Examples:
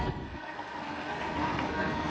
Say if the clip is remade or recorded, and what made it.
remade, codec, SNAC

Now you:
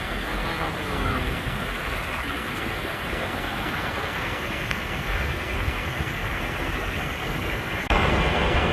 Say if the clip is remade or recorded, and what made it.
remade, codec, SNAC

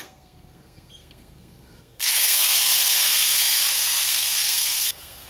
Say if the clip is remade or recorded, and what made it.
remade, codec, SNAC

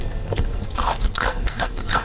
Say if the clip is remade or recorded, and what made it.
remade, codec, SNAC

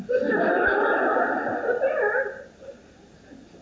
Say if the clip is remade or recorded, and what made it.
recorded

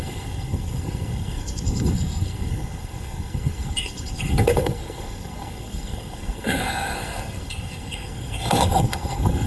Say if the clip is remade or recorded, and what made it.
remade, codec, SNAC